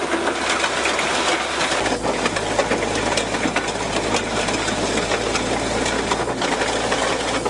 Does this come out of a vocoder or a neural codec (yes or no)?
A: no